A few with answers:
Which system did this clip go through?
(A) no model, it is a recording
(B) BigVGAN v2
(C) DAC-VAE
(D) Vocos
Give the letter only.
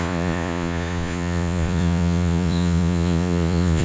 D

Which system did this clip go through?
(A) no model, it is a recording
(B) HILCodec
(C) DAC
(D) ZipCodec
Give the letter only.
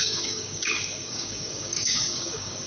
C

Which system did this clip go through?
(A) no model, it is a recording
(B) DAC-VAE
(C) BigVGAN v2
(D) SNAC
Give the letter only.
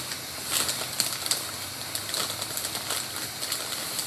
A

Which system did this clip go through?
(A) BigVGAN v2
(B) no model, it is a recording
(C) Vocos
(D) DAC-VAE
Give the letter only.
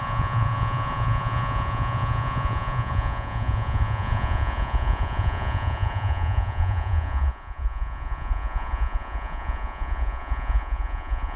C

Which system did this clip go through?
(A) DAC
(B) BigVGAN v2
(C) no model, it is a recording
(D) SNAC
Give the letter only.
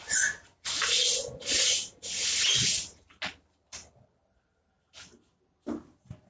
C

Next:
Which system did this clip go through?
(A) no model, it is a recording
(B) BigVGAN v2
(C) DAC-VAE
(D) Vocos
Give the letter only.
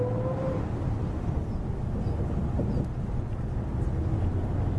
A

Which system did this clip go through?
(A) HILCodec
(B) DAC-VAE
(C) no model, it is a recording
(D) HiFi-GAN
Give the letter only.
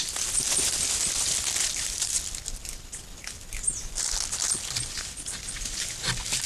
C